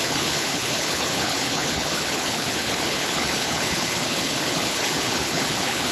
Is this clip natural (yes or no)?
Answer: no